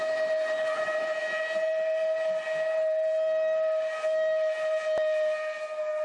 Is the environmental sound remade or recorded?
recorded